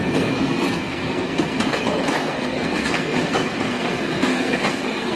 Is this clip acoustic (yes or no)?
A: no